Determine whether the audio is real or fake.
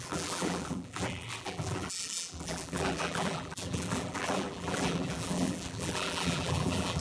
fake